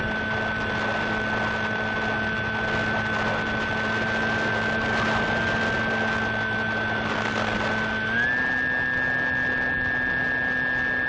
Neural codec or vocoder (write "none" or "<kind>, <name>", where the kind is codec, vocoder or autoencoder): none